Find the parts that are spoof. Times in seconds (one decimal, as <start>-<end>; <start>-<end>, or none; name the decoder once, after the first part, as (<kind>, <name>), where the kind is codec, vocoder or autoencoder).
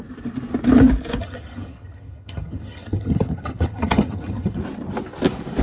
1.2-4.6 (vocoder, HiFi-GAN)